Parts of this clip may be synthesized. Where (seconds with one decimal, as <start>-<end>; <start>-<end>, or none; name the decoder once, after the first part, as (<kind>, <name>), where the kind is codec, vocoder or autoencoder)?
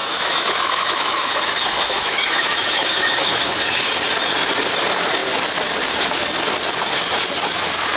0.0-3.8 (autoencoder, DAC-VAE)